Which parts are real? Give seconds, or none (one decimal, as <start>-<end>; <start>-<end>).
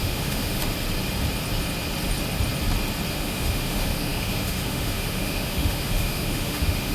0.6-3.1